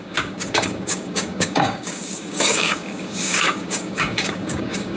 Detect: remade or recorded remade